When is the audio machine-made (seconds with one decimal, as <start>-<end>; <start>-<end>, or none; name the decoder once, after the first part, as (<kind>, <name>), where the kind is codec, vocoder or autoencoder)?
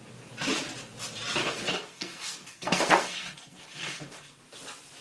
1.4-4.4 (codec, SNAC)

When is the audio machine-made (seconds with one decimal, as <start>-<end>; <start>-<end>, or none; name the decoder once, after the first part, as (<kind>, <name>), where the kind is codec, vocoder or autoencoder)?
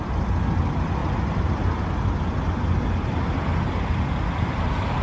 none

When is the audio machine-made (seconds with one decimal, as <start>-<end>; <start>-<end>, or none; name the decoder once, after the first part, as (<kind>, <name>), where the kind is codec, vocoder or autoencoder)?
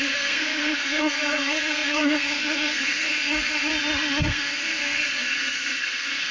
0.0-3.7 (codec, SNAC); 4.2-6.3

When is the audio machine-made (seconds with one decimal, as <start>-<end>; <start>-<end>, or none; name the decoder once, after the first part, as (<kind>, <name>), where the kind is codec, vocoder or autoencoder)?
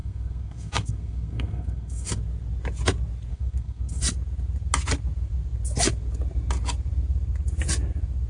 0.0-2.2 (codec, SNAC); 3.3-4.0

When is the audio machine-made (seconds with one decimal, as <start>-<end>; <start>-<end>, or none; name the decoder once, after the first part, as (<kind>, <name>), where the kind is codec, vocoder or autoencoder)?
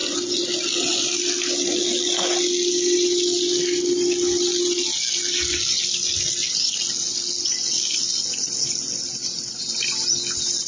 none